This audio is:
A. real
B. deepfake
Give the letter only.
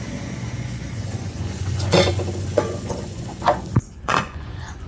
B